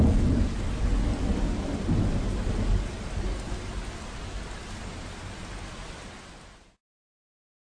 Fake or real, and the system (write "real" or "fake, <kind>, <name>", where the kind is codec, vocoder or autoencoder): real